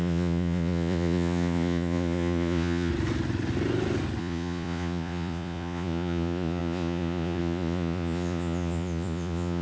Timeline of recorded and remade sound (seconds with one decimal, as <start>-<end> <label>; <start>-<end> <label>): 0.0-2.9 remade; 2.9-4.2 recorded; 4.2-9.6 remade

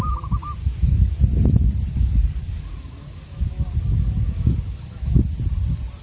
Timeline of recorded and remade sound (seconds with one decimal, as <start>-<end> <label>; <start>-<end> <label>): 0.0-0.6 recorded; 0.6-1.1 remade; 1.1-1.9 recorded; 1.9-5.3 remade; 5.3-6.0 recorded

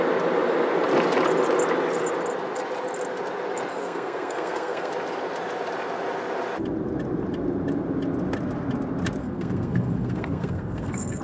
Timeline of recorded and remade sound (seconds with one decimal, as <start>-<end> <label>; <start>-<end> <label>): 0.0-3.7 recorded; 3.7-4.9 remade; 4.9-9.2 recorded; 9.2-11.2 remade

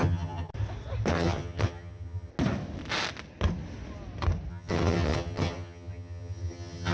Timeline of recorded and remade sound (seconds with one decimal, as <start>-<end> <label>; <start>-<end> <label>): 0.0-0.5 remade; 0.5-1.1 recorded; 1.1-2.3 remade; 2.3-4.5 recorded; 4.5-6.9 remade

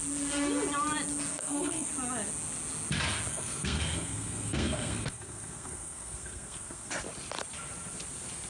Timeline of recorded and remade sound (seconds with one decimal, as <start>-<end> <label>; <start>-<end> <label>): 0.0-1.3 recorded; 1.3-1.9 remade; 1.9-3.3 recorded; 3.3-6.9 remade; 6.9-8.5 recorded

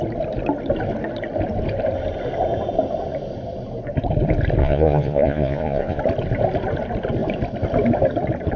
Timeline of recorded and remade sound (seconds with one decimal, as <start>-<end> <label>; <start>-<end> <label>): 0.0-4.6 recorded; 4.6-6.0 remade; 6.0-8.6 recorded

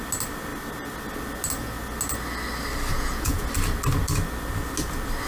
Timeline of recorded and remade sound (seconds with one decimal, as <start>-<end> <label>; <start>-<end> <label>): 0.0-2.9 recorded; 2.9-3.5 remade; 3.5-5.3 recorded

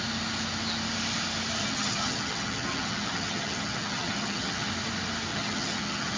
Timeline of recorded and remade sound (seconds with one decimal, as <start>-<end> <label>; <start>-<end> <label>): 0.0-1.6 recorded; 1.6-4.7 remade; 4.7-5.3 recorded; 5.3-6.2 remade